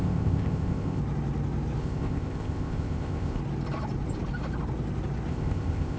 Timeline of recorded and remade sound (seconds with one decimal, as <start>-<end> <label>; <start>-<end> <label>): 0.0-1.0 remade; 1.0-1.8 recorded; 1.8-3.4 remade; 3.4-5.3 recorded; 5.3-6.0 remade